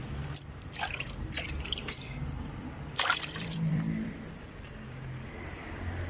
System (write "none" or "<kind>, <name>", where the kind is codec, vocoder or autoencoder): vocoder, BigVGAN v2